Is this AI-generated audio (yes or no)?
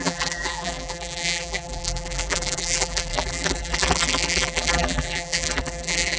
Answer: yes